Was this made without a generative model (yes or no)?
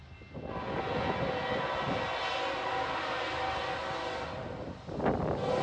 yes